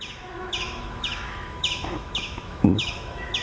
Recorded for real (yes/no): no